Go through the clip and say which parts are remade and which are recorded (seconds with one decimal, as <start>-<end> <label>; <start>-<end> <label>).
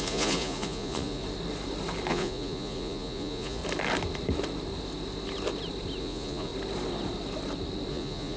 0.0-1.2 remade; 1.2-2.1 recorded; 2.1-3.6 remade; 3.6-6.0 recorded; 6.0-6.5 remade; 6.5-7.9 recorded; 7.9-8.4 remade